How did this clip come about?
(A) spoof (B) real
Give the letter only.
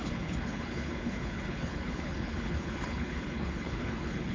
A